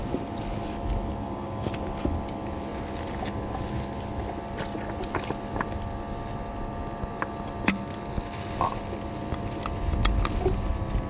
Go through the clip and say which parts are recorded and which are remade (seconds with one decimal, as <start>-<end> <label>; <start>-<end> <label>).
0.0-1.1 recorded; 1.1-1.7 remade; 1.7-11.1 recorded